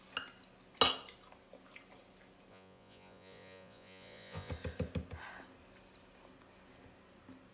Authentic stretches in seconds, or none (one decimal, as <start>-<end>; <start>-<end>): 0.0-2.5; 4.5-7.5